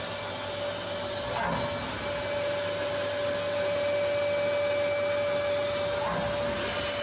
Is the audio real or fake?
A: real